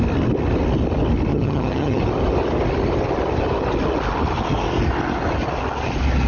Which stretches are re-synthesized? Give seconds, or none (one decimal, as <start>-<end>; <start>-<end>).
1.3-2.0

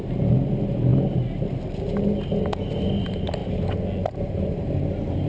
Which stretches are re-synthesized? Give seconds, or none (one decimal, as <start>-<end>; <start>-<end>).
none

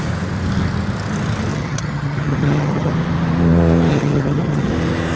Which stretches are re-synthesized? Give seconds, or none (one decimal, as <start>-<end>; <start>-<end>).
1.5-2.9; 3.9-4.7

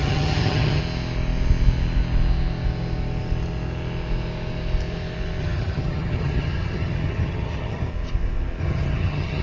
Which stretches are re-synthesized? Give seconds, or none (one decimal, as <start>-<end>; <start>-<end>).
0.0-0.8; 5.4-7.9; 8.6-9.4

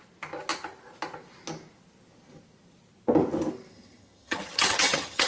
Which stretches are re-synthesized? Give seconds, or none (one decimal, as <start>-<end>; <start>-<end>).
3.7-5.3